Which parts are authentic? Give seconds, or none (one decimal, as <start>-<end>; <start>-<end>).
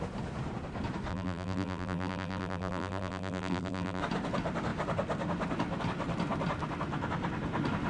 0.0-1.1; 4.0-7.9